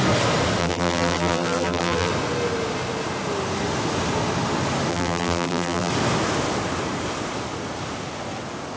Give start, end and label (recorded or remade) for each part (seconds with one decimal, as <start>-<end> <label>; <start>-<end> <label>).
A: 0.0-0.6 recorded; 0.6-2.1 remade; 2.1-4.9 recorded; 4.9-5.9 remade; 5.9-8.8 recorded